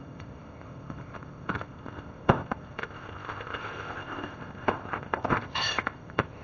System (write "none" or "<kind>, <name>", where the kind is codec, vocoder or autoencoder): codec, ZipCodec